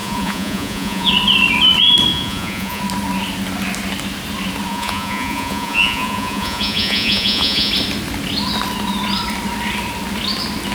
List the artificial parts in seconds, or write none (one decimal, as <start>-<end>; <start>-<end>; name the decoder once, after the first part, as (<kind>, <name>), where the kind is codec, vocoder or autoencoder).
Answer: 0.0-1.1 (vocoder, Vocos); 2.1-2.8; 4.7-7.7

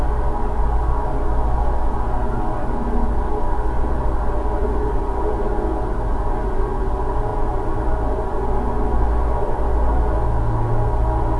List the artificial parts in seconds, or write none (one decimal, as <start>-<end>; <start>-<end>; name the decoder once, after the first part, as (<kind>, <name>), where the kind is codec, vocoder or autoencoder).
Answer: none

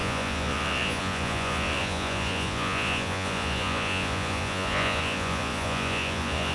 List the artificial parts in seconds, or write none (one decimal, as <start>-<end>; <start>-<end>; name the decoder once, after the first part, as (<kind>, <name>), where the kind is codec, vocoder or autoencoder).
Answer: 0.0-6.5 (vocoder, Vocos)